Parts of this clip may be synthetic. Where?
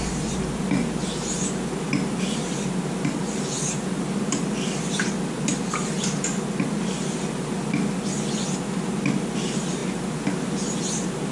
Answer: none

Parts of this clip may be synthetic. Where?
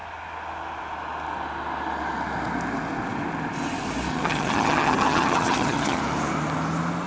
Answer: 4.1-6.0 (vocoder, HiFi-GAN)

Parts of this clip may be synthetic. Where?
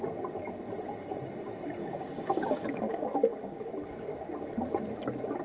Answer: 1.8-3.7 (codec, DAC)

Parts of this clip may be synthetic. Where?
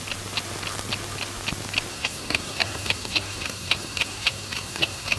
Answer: 1.9-5.2 (codec, SNAC)